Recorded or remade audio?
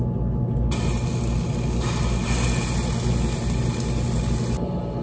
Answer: recorded